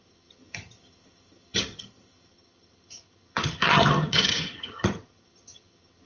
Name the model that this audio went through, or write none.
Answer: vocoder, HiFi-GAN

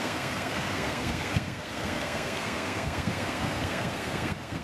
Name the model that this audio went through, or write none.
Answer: codec, SNAC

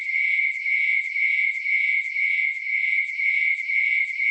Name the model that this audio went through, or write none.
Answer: vocoder, Vocos